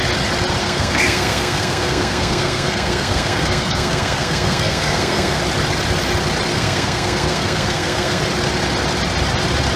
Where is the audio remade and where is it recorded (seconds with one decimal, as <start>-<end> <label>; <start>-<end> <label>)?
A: 0.0-0.6 recorded; 0.6-5.4 remade; 5.4-6.5 recorded; 6.5-8.2 remade; 8.2-9.8 recorded